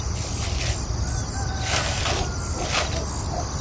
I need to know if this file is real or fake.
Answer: real